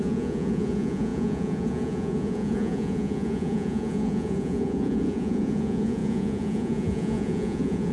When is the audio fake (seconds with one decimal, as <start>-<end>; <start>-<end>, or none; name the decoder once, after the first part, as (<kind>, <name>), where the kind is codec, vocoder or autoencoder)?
0.0-7.9 (vocoder, Vocos)